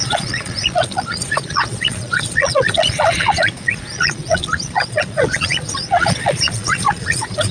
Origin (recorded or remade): remade